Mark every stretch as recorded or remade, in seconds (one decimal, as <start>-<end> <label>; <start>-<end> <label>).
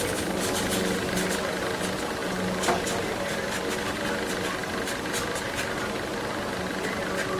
0.0-7.4 recorded